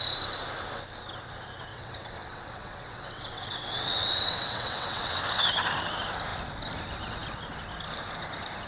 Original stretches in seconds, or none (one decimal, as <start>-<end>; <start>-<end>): 0.0-1.7; 5.2-8.7